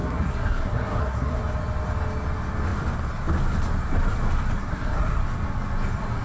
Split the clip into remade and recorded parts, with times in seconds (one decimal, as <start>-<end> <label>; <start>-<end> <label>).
0.0-1.4 remade; 1.4-4.7 recorded; 4.7-5.2 remade; 5.2-6.2 recorded